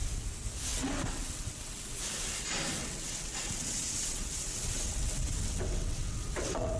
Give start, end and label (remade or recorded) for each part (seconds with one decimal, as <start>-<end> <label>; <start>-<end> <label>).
0.0-0.7 recorded; 0.7-2.0 remade; 2.0-2.8 recorded; 2.8-6.8 remade